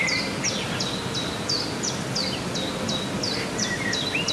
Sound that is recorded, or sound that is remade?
recorded